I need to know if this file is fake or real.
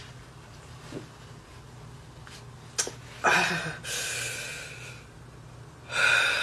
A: real